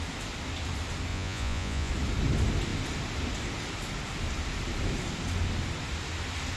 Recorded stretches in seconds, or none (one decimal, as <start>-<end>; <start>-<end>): 0.0-1.1; 1.9-6.6